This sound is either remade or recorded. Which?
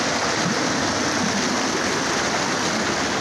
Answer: recorded